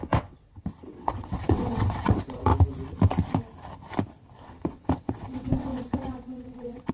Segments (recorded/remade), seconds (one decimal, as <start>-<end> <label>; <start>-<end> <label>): 0.0-2.5 remade; 2.5-4.4 recorded; 4.4-6.9 remade